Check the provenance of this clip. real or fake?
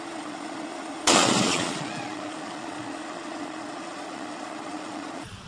fake